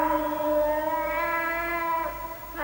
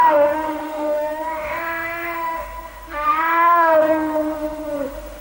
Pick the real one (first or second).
first